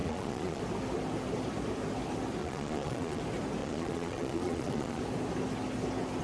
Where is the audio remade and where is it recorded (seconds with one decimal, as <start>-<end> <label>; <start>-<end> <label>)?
0.0-0.6 remade; 0.6-2.4 recorded; 2.4-3.2 remade; 3.2-3.6 recorded; 3.6-5.0 remade; 5.0-6.2 recorded